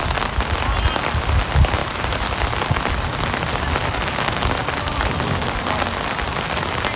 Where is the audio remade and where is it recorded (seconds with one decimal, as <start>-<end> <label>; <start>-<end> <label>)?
0.0-1.8 recorded; 1.8-3.1 remade; 3.1-4.6 recorded; 4.6-6.0 remade; 6.0-7.0 recorded